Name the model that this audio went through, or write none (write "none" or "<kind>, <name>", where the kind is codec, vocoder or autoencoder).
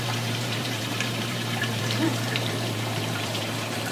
vocoder, BigVGAN v2